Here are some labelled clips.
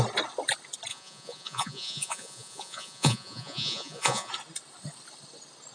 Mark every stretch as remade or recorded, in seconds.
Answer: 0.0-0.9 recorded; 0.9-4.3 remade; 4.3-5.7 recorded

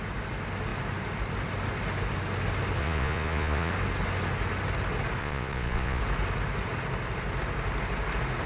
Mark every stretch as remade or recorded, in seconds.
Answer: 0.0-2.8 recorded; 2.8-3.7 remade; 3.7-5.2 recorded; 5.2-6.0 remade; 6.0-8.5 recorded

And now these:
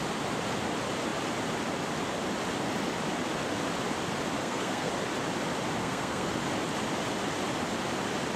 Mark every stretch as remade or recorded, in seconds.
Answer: 0.0-4.4 recorded; 4.4-4.9 remade; 4.9-5.8 recorded; 5.8-6.3 remade; 6.3-8.4 recorded

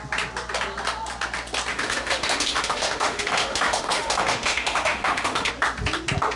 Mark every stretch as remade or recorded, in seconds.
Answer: 0.0-1.7 recorded; 1.7-5.5 remade; 5.5-6.4 recorded